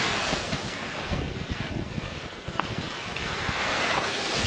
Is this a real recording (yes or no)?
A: no